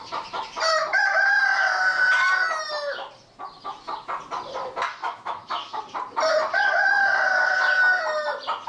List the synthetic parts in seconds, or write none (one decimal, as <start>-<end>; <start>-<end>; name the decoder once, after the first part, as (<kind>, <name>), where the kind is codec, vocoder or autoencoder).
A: 5.0-5.8 (autoencoder, DAC-VAE)